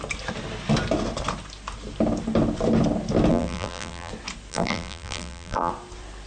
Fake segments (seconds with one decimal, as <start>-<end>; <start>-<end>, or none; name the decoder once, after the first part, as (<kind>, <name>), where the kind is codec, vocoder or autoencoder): 3.3-4.1 (vocoder, BigVGAN v2); 4.5-5.7